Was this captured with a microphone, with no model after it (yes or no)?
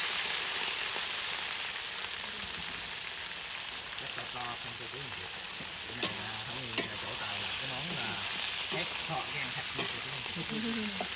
yes